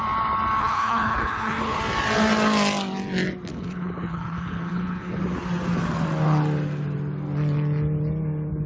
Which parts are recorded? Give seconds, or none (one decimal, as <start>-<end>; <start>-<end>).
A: 0.0-0.6; 1.8-3.5; 5.2-8.7